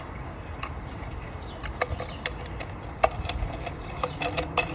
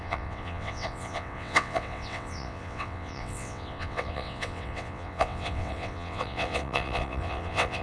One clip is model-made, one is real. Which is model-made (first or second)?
second